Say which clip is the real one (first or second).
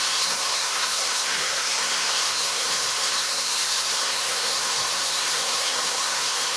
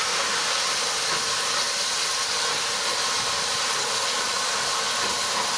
second